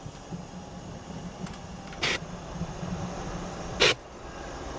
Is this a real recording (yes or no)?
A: yes